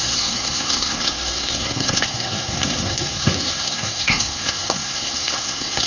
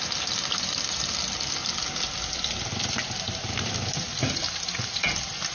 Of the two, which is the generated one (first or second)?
first